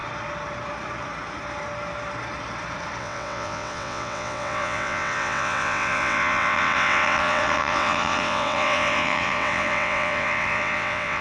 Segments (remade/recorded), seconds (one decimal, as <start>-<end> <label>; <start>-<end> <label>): 0.0-3.0 recorded; 3.0-11.2 remade